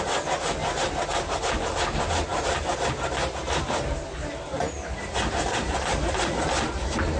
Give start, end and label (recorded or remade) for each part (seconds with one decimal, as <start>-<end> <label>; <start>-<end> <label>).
0.0-7.2 recorded